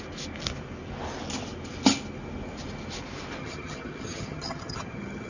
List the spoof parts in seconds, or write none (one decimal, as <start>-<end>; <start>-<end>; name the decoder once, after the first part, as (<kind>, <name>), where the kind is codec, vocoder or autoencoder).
3.4-5.3 (vocoder, HiFi-GAN)